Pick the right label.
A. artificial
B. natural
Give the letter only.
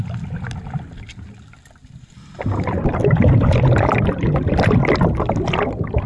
B